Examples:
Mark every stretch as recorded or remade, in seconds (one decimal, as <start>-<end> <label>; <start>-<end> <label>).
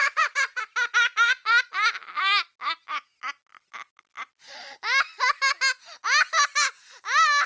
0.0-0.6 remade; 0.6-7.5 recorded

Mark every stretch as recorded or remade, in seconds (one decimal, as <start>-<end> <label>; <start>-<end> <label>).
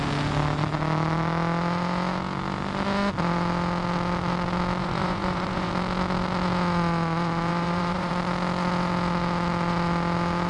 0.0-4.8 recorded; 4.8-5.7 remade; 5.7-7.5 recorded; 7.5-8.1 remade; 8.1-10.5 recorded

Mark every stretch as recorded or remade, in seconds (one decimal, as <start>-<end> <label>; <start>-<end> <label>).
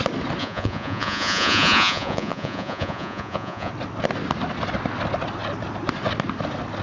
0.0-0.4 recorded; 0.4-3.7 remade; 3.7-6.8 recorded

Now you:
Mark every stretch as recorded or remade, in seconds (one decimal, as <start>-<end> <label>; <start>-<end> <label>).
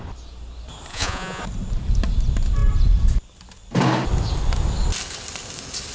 0.0-0.9 recorded; 0.9-1.4 remade; 1.4-5.9 recorded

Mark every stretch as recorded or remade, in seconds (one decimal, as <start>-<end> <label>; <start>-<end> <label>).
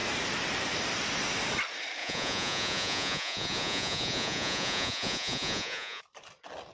0.0-2.0 recorded; 2.0-6.0 remade; 6.0-6.7 recorded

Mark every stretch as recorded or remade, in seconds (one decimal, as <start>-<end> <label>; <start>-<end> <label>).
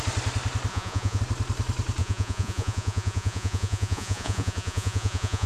0.0-0.7 recorded; 0.7-1.2 remade; 1.2-2.0 recorded; 2.0-5.5 remade